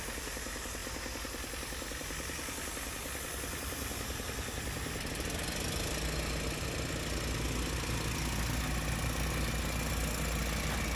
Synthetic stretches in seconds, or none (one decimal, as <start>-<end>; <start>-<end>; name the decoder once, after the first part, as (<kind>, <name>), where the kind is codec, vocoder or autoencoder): none